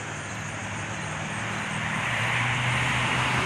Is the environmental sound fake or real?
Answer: real